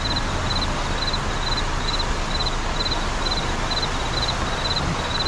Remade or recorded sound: recorded